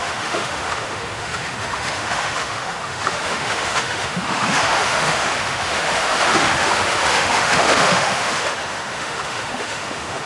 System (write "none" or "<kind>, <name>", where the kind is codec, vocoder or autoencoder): autoencoder, DAC-VAE